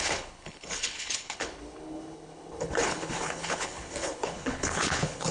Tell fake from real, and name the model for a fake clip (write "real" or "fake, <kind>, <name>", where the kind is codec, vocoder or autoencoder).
fake, codec, HILCodec